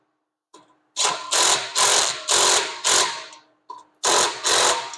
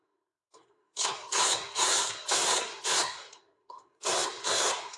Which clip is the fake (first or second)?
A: second